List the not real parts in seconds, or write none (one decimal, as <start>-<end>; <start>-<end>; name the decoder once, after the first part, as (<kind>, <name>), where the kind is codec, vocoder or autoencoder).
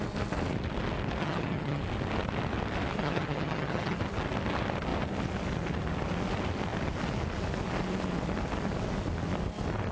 1.2-1.8 (vocoder, HiFi-GAN); 3.0-4.0